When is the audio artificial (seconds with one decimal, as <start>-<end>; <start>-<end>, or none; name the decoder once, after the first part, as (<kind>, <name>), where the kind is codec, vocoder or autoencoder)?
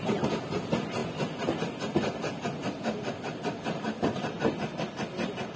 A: none